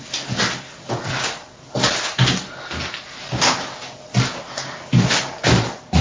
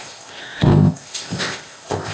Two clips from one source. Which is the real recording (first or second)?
first